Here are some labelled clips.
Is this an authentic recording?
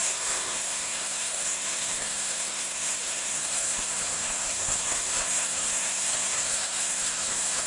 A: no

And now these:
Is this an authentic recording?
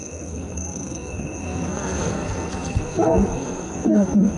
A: no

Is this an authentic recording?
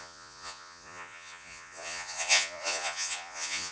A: no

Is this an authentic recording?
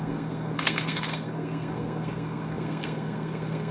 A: no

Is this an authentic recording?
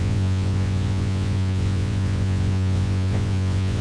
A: no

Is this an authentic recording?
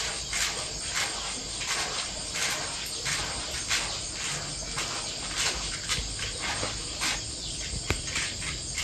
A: yes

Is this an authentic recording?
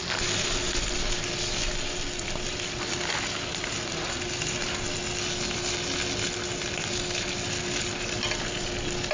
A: yes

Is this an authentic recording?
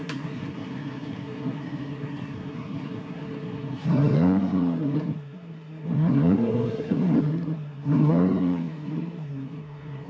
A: no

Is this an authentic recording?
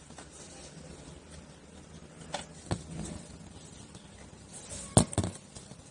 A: yes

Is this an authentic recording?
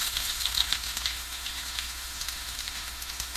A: no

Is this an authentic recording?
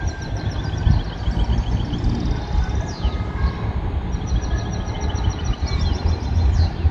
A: yes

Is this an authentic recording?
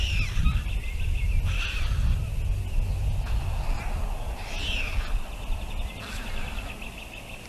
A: yes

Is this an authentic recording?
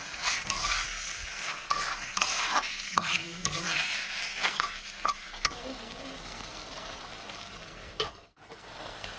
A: no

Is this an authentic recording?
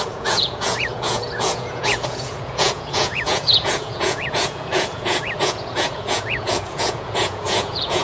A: no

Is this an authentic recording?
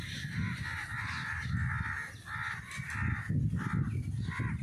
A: yes